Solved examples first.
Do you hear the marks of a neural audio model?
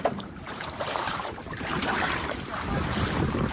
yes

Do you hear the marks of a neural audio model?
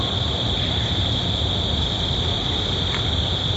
no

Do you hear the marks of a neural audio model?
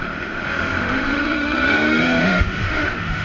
yes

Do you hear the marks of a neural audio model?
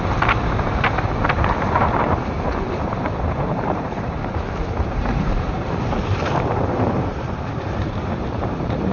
yes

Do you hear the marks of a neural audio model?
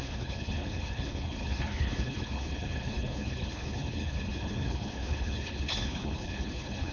yes